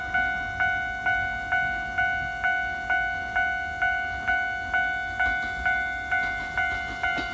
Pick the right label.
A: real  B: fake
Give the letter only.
A